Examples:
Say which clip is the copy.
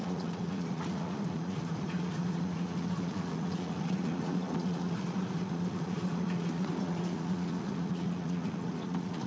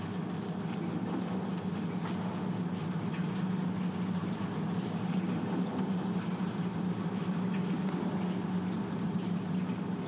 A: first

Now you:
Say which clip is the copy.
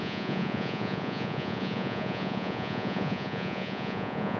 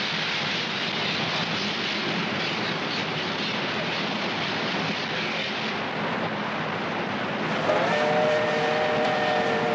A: first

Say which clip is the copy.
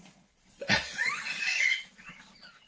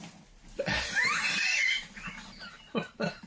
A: first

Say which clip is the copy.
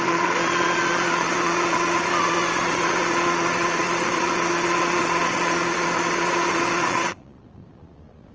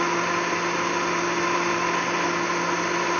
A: first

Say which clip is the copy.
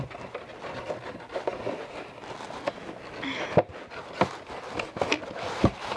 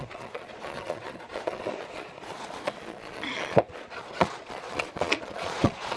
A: second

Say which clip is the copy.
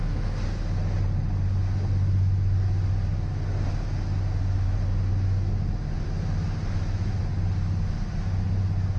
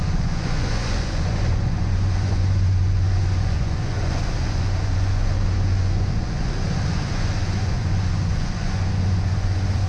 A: second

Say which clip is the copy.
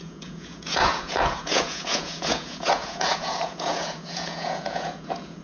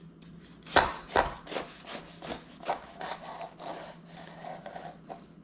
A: first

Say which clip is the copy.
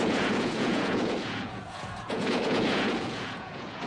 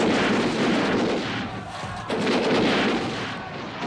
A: first